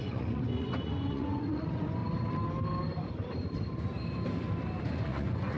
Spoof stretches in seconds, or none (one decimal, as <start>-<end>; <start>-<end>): 0.0-2.0; 4.8-5.6